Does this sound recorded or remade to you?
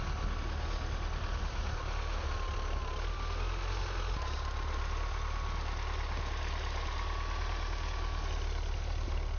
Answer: recorded